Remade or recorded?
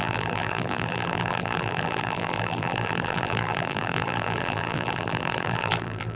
remade